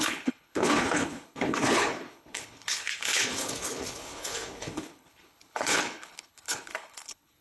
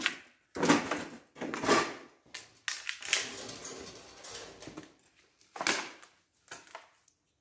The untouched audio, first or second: second